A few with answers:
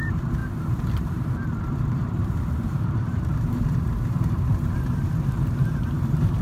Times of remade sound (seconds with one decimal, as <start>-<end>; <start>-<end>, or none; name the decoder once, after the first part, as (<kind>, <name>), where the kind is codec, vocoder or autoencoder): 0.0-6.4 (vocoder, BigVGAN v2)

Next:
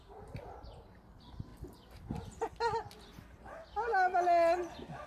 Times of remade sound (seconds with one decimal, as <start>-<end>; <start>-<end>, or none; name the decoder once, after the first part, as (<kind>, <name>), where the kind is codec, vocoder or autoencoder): none

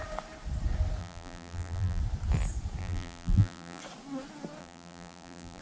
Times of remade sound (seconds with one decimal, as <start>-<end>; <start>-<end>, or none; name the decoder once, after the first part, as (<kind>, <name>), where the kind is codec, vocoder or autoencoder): 1.0-2.0 (vocoder, BigVGAN v2); 2.8-3.8; 4.6-5.6

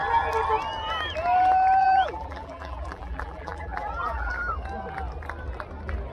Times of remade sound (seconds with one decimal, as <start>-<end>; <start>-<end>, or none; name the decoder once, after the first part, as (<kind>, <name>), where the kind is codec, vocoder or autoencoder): 1.8-4.3 (vocoder, BigVGAN v2)

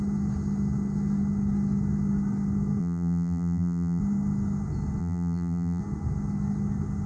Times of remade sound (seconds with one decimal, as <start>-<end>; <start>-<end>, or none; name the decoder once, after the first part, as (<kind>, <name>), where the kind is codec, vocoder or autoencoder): 2.8-4.0 (vocoder, BigVGAN v2); 5.0-5.8

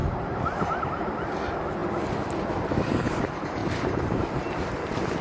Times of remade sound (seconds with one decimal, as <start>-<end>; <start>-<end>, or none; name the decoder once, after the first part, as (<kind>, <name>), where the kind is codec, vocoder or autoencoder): 0.0-0.8 (vocoder, BigVGAN v2); 3.6-4.5

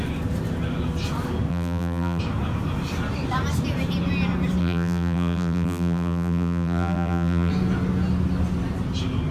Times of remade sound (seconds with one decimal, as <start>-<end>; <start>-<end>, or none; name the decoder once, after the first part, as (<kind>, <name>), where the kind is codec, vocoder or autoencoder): 1.5-2.2 (vocoder, BigVGAN v2); 4.6-7.5

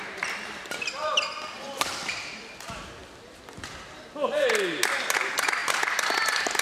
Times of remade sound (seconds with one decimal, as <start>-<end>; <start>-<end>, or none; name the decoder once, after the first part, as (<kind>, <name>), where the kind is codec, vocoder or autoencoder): 0.0-3.0 (vocoder, BigVGAN v2); 4.0-6.6